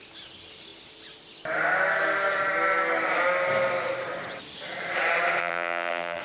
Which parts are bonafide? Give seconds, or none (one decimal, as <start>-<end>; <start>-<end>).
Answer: 0.0-5.4